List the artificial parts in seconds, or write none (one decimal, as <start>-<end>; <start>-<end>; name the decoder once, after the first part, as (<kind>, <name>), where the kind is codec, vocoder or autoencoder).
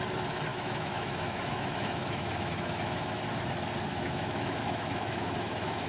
0.5-3.2 (autoencoder, DAC-VAE); 3.9-5.9